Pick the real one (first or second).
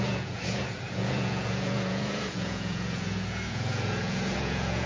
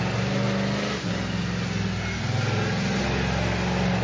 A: second